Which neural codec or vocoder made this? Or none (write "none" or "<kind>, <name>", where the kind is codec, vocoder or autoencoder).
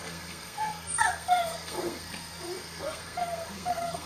codec, SNAC